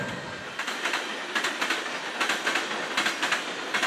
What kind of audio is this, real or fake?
real